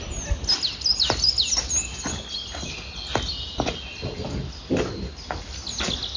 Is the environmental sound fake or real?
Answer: real